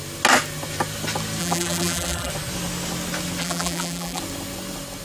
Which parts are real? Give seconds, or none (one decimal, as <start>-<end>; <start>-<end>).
0.0-1.4; 2.3-3.4; 4.2-5.0